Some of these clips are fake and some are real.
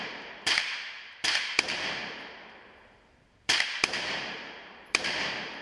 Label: fake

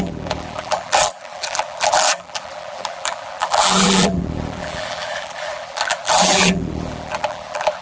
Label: fake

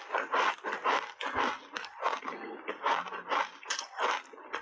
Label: real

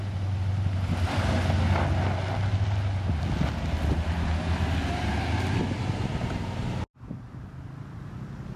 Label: real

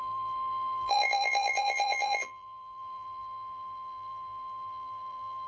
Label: fake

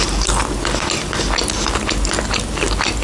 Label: real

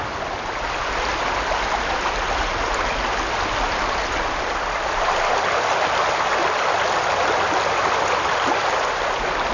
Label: real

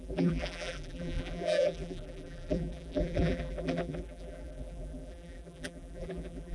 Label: fake